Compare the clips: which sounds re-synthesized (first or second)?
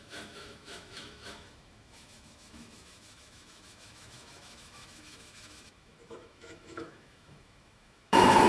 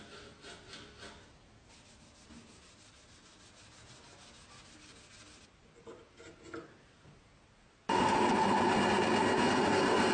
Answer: first